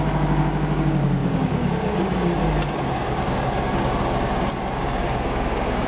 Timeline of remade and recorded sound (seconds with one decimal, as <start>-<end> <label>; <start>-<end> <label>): 0.0-2.4 remade; 2.4-2.9 recorded; 2.9-5.9 remade